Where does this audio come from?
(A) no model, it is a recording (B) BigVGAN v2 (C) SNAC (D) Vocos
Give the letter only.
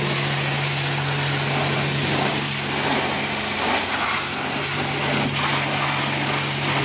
A